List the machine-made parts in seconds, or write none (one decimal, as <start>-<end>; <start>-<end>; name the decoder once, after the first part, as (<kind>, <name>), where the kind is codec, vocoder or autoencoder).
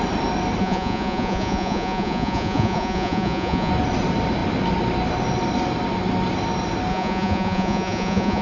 0.6-3.7 (vocoder, Vocos); 6.9-8.4